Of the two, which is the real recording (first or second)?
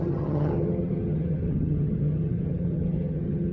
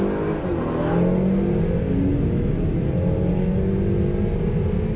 second